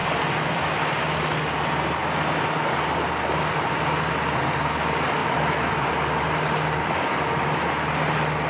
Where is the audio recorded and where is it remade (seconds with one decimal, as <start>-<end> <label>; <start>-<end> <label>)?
0.0-1.0 remade; 1.0-5.2 recorded; 5.2-5.9 remade; 5.9-8.5 recorded